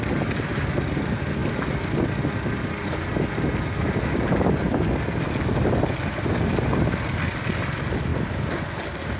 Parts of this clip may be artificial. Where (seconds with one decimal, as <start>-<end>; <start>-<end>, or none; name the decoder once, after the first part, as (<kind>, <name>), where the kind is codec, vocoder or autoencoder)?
none